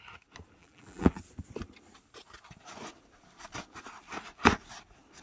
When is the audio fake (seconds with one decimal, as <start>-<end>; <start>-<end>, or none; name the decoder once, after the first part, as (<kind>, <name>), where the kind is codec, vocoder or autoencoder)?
0.6-1.2 (vocoder, BigVGAN v2)